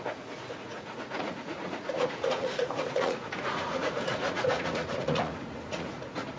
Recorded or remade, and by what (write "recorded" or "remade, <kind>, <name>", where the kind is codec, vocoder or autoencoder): remade, vocoder, Vocos